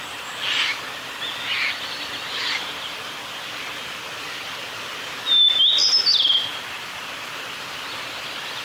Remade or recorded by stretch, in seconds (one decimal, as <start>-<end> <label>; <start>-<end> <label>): 0.0-8.6 recorded